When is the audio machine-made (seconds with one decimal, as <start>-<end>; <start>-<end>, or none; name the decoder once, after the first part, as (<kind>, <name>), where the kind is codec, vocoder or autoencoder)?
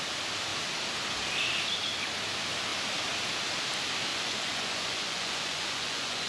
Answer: 4.1-6.3 (vocoder, Vocos)